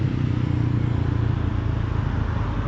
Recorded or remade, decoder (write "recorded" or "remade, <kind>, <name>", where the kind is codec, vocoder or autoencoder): recorded